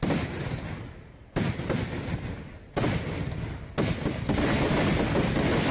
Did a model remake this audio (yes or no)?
no